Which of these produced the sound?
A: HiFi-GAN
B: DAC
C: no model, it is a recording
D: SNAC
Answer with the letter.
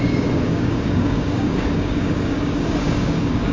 B